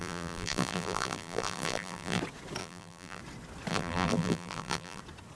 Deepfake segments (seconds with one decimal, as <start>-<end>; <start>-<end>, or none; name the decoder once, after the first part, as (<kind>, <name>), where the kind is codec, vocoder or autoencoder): 0.0-2.2 (vocoder, BigVGAN v2); 2.6-3.2; 3.7-5.0

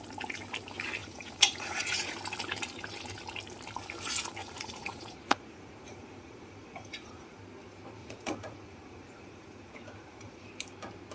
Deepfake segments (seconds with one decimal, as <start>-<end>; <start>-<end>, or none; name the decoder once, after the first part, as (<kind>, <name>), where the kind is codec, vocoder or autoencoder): 1.0-2.1 (vocoder, Vocos); 4.4-7.4; 8.0-10.5

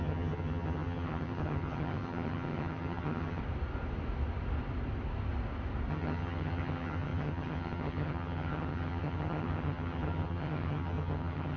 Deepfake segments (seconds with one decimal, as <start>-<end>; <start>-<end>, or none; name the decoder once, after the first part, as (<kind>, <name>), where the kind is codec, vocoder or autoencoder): 0.0-3.4 (vocoder, HiFi-GAN); 5.9-11.6